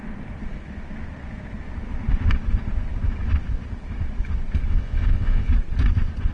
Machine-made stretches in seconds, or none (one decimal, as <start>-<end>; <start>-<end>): 4.7-5.5